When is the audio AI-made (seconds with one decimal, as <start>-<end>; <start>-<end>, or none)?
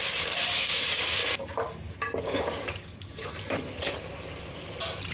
0.0-1.2; 2.2-3.3